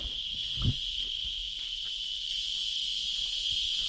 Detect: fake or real real